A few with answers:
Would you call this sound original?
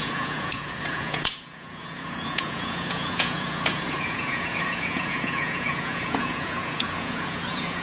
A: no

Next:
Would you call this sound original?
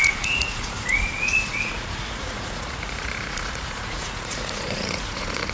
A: no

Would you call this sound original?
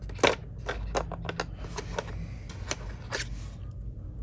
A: yes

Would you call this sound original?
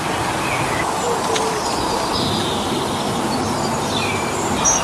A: yes